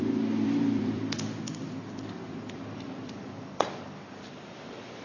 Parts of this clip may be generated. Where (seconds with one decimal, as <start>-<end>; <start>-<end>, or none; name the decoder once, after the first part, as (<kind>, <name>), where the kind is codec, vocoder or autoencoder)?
0.0-1.5 (vocoder, BigVGAN v2); 2.6-5.0